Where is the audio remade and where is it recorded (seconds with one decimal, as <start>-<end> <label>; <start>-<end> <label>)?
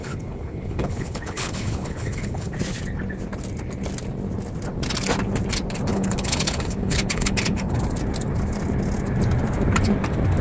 0.0-2.5 remade; 2.5-5.9 recorded; 5.9-7.8 remade; 7.8-10.4 recorded